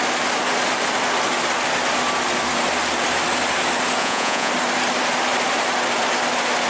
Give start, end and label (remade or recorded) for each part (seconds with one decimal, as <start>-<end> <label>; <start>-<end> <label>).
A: 0.0-4.0 recorded; 4.0-4.5 remade; 4.5-6.7 recorded